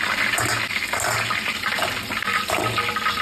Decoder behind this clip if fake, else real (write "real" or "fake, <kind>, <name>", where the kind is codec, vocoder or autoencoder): real